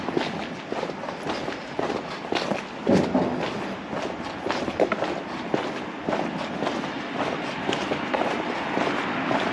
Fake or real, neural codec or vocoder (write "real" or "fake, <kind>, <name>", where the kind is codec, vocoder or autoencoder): real